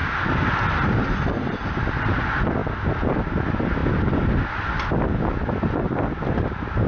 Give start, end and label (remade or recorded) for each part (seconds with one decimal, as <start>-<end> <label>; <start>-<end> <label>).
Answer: 0.0-6.9 recorded